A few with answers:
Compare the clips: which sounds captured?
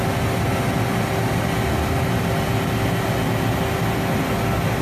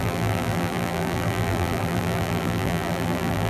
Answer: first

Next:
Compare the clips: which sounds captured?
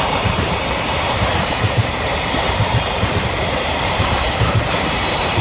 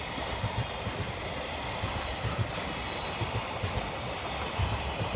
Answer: second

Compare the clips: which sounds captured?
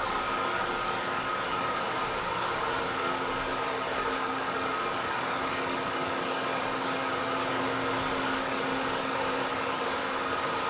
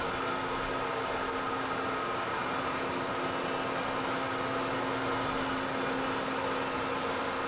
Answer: second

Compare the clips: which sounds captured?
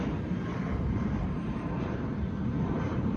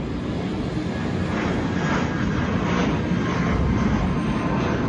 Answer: second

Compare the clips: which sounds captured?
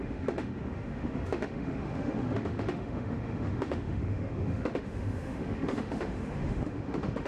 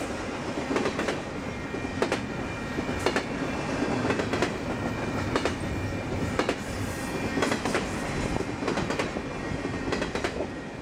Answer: second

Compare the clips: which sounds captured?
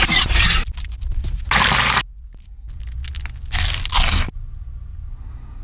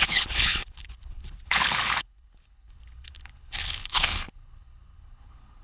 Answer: first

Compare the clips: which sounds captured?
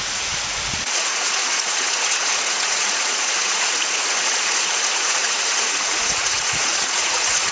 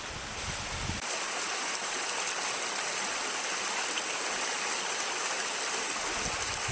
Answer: second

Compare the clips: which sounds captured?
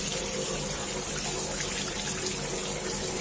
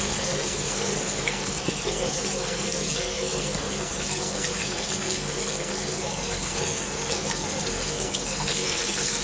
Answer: first